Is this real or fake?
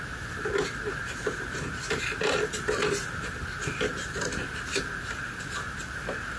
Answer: real